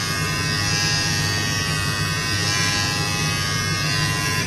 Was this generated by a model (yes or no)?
no